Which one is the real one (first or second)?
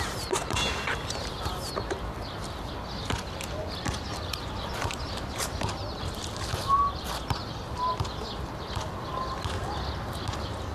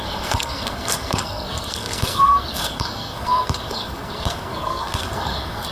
first